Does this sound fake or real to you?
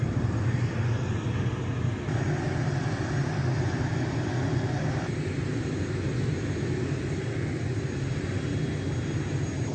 real